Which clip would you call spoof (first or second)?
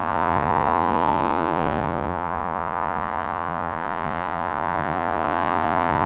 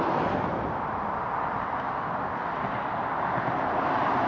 first